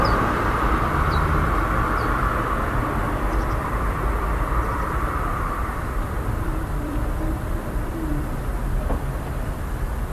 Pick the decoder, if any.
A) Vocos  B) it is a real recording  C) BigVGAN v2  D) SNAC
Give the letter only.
C